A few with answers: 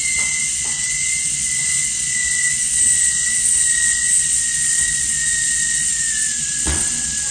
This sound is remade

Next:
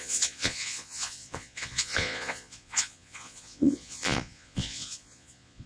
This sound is remade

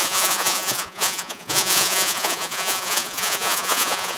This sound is remade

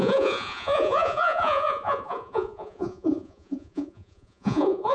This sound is remade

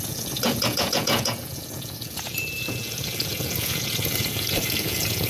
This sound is remade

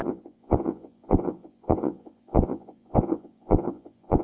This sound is remade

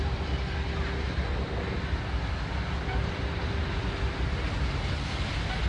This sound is recorded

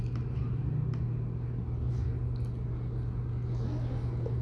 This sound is recorded